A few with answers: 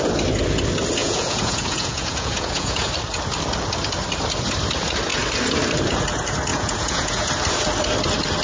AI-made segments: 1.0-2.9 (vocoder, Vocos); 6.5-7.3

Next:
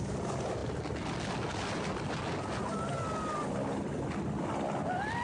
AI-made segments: none

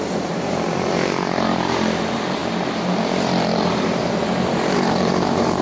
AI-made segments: 0.0-5.6 (vocoder, BigVGAN v2)

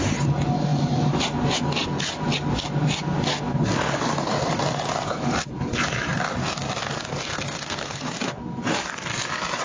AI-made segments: 7.3-8.0 (codec, SNAC)

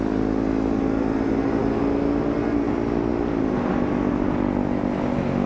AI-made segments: none

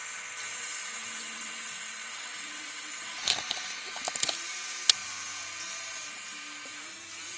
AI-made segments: 0.5-3.2 (vocoder, WaveNeXt)

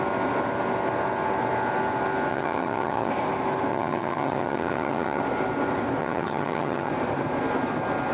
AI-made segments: 2.3-3.1 (vocoder, HiFi-GAN); 3.7-5.2; 6.0-6.9

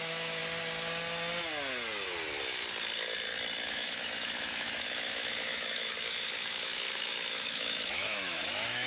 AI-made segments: 0.0-0.4 (autoencoder, DAC-VAE); 3.7-8.9